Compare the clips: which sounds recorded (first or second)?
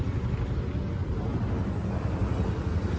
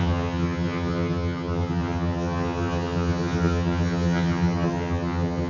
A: first